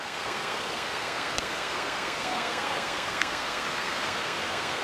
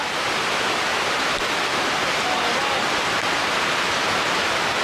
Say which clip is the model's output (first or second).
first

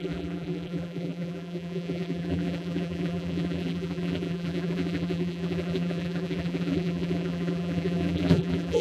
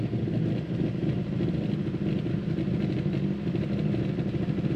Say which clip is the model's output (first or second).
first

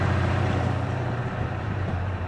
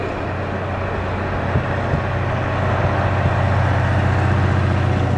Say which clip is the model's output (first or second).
first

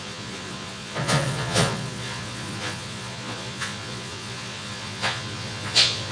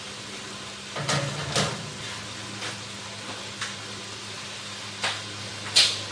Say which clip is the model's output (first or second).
first